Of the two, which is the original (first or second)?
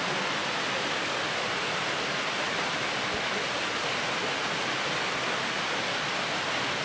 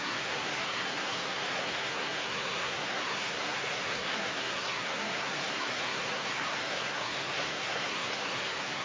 first